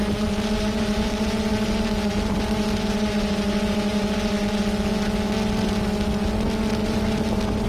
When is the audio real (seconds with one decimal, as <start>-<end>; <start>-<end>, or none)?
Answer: 4.6-6.8